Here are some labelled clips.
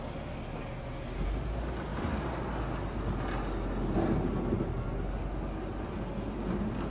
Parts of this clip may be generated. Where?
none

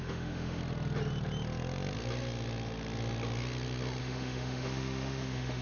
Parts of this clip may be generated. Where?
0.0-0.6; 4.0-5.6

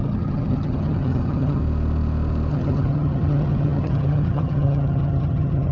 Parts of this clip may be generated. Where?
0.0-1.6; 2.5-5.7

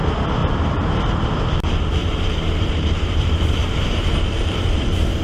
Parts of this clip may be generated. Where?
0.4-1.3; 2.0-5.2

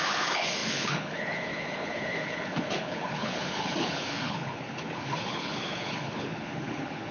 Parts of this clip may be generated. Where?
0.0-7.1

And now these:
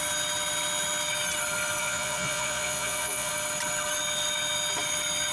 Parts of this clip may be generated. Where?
1.8-3.3

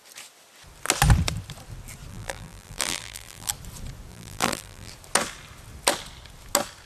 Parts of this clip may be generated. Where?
2.1-3.5; 4.1-4.9

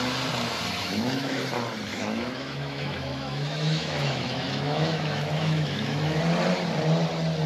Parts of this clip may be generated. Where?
0.8-1.4; 1.9-6.2